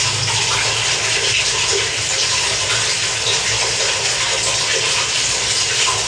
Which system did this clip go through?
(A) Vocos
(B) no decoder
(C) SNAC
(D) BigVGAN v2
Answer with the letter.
B